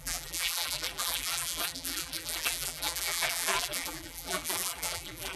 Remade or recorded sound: remade